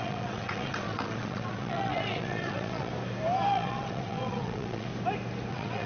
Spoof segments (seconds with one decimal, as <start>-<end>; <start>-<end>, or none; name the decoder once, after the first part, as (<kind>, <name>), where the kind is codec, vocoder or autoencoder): 0.0-2.9 (vocoder, WaveNeXt); 3.5-4.9; 5.5-5.9